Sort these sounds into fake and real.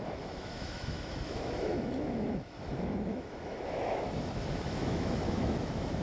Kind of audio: fake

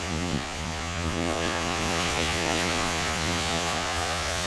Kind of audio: fake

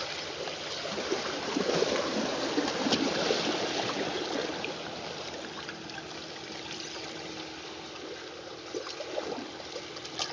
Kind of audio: real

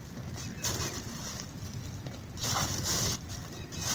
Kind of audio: real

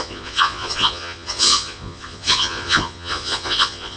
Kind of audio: fake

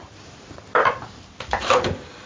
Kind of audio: fake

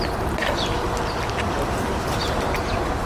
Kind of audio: fake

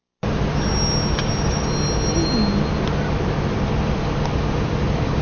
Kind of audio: real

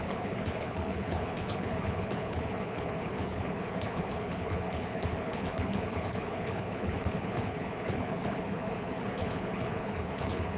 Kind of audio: fake